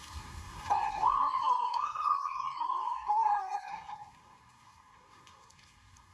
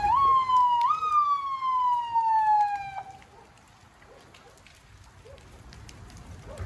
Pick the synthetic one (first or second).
first